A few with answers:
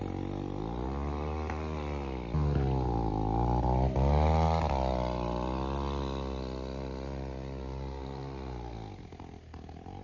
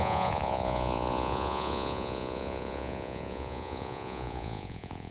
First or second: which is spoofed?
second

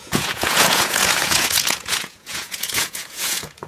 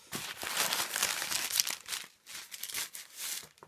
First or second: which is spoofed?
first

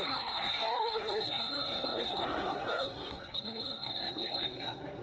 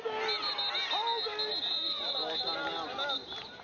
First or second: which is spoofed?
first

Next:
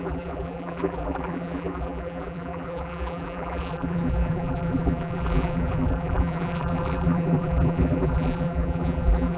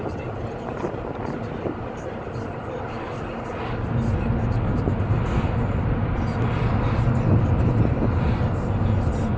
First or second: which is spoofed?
first